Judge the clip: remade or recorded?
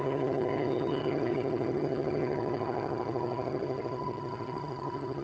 remade